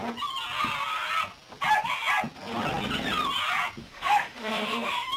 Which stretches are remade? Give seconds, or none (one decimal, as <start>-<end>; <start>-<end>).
3.8-5.2